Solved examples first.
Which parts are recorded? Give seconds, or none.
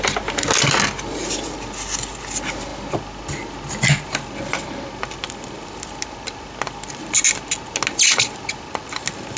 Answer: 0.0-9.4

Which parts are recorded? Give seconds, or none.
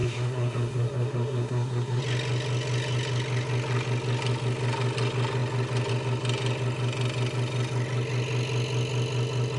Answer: 2.0-9.6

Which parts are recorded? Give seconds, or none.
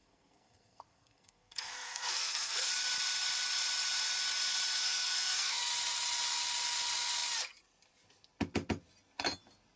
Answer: 2.7-4.8; 5.7-9.8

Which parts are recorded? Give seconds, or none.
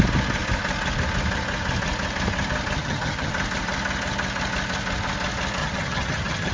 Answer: 0.0-2.8; 3.3-5.6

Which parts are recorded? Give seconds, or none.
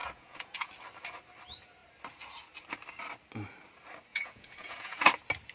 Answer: 0.7-4.1; 5.1-5.5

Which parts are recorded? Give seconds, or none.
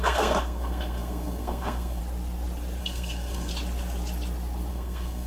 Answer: 2.0-2.8; 3.5-4.7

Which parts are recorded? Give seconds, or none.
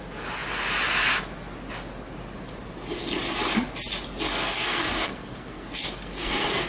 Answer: 0.0-4.3